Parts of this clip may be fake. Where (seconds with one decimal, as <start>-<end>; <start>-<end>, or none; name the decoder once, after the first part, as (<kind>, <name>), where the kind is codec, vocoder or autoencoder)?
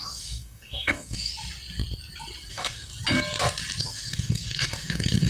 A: 0.0-1.3 (codec, DAC); 2.5-2.9; 3.8-5.3